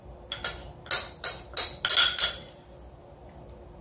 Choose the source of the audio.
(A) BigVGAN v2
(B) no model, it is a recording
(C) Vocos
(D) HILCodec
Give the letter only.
B